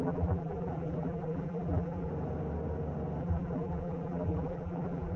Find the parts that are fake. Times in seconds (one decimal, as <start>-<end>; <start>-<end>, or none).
0.0-2.1; 3.2-5.2